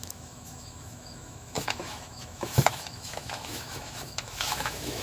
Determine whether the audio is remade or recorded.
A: remade